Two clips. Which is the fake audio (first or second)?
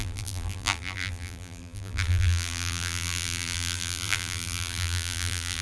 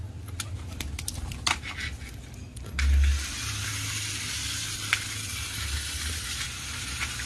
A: first